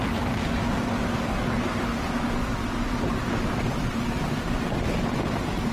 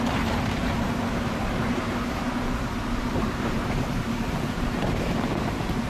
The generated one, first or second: second